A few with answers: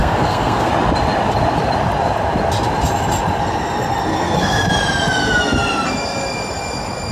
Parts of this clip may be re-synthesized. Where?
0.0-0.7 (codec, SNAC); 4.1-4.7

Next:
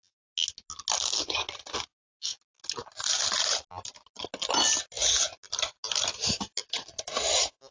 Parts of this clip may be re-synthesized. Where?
none

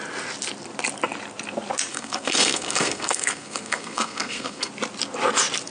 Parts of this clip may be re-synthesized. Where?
1.9-4.7 (codec, SNAC)

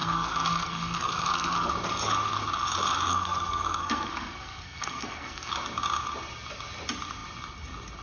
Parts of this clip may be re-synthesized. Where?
0.0-1.7 (codec, SNAC); 3.1-5.5

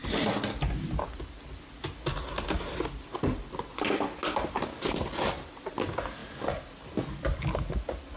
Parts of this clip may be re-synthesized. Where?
none

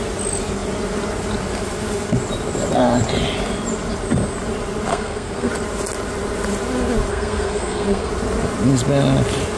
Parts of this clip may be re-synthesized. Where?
4.9-5.5 (codec, SNAC); 7.1-8.1

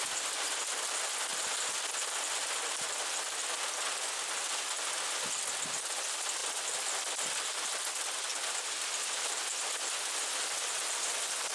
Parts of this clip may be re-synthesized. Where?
none

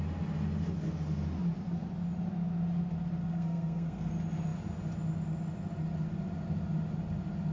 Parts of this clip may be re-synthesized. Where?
3.2-4.1 (codec, SNAC)